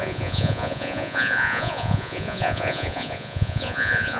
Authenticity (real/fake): fake